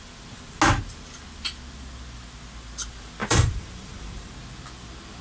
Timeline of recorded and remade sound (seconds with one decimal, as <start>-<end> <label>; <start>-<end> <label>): 0.0-3.2 recorded; 3.2-4.3 remade; 4.3-5.2 recorded